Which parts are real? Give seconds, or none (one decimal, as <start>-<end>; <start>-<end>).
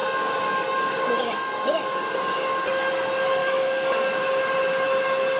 2.5-3.4; 4.2-5.4